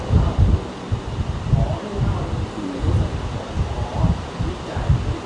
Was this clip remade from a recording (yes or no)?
no